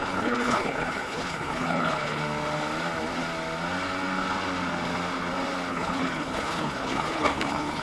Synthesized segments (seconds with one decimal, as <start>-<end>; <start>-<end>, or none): 0.0-2.2; 5.7-7.8